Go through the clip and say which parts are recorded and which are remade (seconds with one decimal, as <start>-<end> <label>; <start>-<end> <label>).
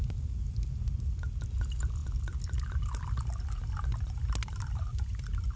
0.0-5.6 recorded